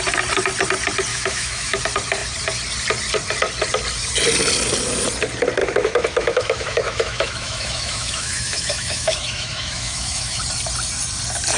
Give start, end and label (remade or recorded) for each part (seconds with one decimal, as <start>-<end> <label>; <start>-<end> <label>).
0.0-1.1 recorded; 1.1-1.8 remade; 1.8-5.6 recorded; 5.6-10.4 remade; 10.4-11.6 recorded